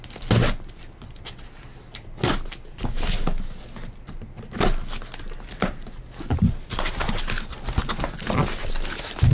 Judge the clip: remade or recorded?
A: recorded